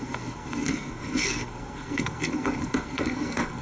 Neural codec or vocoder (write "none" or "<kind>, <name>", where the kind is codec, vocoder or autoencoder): codec, SNAC